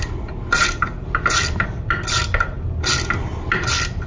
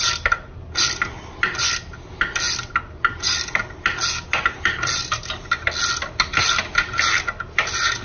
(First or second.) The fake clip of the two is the first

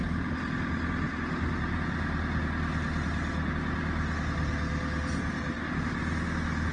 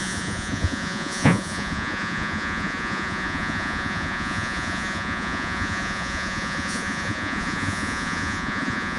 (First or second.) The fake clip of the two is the second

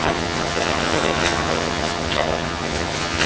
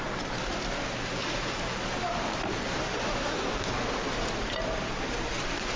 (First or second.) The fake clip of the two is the first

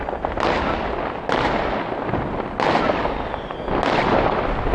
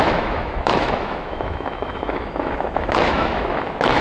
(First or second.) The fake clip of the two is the second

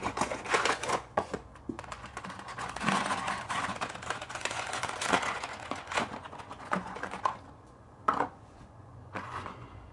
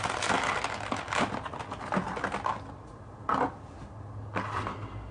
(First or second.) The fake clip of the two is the first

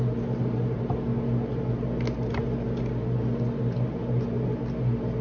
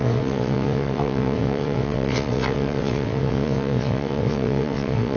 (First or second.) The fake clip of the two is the second